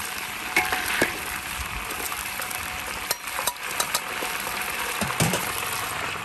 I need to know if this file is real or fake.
fake